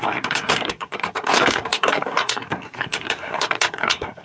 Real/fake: fake